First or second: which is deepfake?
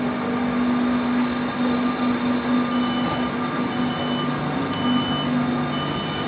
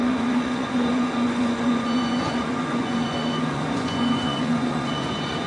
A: second